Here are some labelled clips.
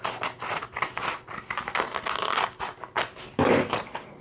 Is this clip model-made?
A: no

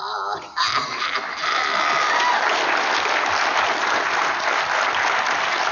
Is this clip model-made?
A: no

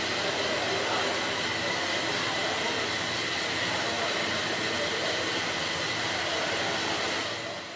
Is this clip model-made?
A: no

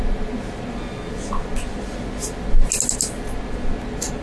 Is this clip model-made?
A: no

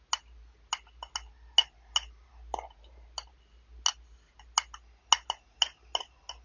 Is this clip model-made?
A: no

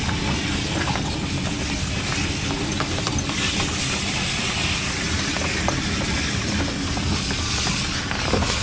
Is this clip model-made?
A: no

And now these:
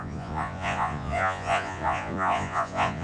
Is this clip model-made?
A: yes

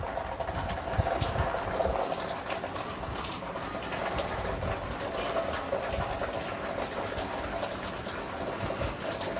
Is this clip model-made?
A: no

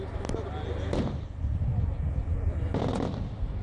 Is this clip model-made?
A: no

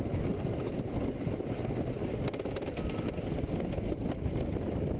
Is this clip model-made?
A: no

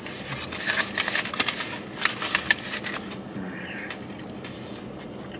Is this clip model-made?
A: no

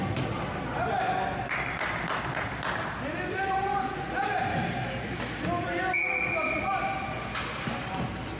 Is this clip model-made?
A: no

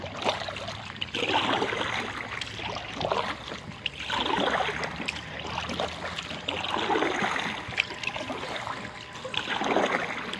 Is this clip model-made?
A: no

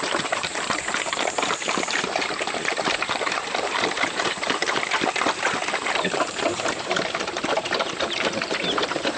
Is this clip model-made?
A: yes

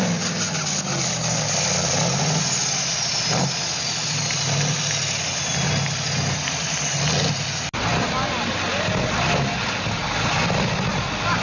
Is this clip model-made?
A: no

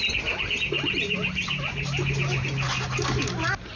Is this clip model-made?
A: no